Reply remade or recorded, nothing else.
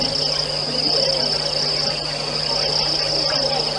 recorded